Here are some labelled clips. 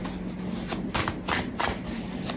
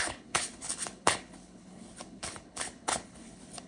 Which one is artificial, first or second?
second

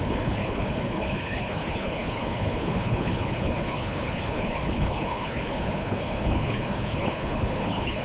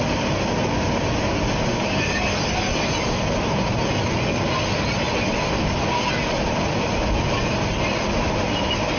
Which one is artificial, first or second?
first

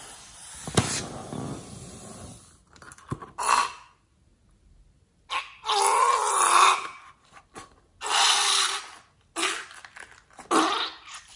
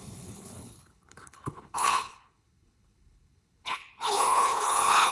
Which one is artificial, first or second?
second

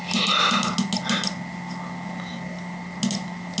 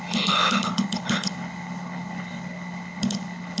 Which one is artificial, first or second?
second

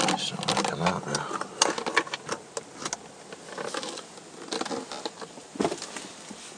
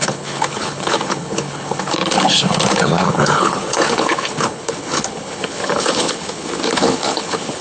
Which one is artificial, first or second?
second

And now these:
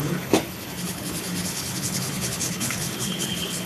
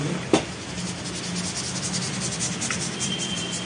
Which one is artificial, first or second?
first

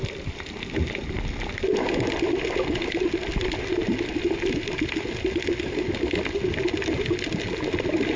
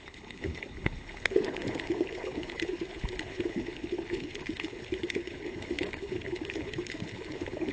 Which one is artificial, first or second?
second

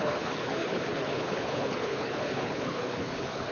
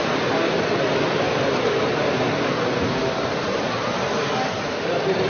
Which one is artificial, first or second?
first